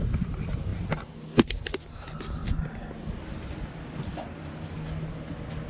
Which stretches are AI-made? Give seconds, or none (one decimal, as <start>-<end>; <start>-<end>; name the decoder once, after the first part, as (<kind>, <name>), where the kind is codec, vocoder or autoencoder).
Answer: none